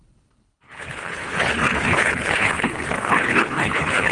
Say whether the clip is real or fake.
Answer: fake